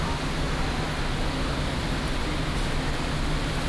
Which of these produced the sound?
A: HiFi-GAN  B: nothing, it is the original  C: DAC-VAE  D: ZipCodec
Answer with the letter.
B